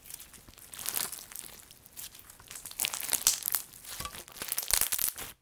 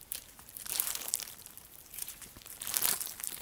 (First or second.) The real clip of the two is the first